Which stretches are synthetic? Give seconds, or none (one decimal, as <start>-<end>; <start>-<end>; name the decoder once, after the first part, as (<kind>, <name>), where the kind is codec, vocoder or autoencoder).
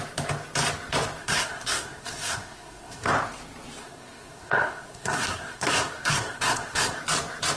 1.2-3.1 (codec, SNAC); 3.8-7.0